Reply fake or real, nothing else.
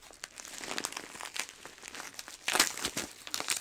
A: real